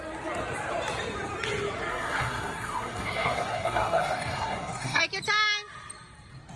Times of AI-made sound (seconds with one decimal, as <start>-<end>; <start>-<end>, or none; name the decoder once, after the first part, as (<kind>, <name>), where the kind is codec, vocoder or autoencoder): 1.9-5.0 (codec, SNAC)